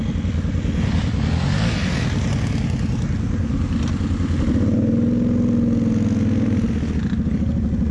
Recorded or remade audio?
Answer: recorded